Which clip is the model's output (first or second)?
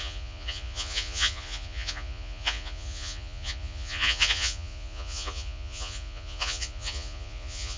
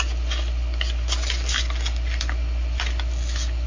first